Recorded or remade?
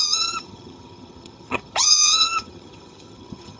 remade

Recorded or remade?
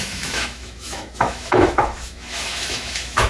remade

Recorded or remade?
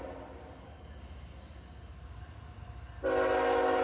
recorded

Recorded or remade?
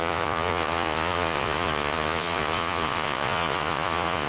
remade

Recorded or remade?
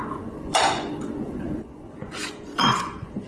remade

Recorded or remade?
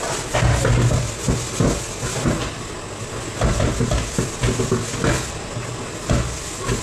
recorded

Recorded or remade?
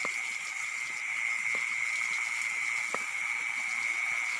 recorded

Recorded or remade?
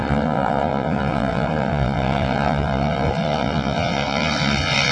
remade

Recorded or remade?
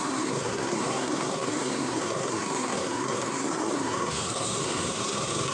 remade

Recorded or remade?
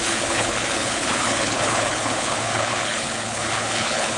remade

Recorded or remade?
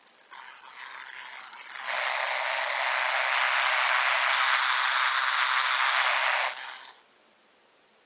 recorded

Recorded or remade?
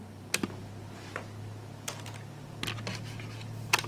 recorded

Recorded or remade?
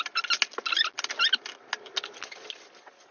recorded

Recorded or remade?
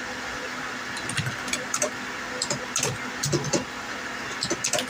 recorded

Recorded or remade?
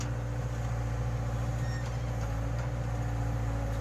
remade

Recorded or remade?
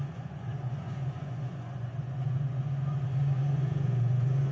remade